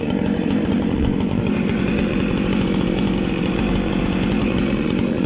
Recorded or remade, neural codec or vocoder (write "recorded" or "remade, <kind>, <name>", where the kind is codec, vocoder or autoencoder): remade, vocoder, Vocos